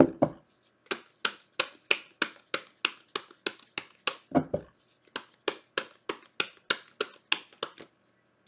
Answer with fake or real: real